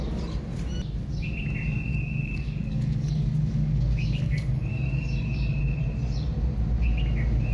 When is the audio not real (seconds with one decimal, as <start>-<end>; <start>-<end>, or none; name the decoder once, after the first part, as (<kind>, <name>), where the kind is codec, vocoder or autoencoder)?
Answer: 1.9-5.6 (codec, DAC)